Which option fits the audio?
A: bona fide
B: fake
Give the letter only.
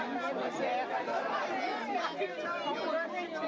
A